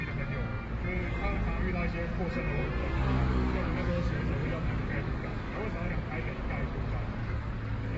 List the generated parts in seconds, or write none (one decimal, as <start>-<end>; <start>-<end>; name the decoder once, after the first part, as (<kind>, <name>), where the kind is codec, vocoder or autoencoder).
2.8-5.9 (codec, DAC); 7.2-8.0